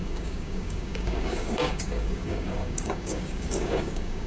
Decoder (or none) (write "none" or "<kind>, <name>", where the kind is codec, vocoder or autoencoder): codec, DAC